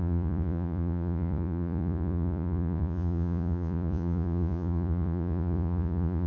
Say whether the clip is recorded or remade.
remade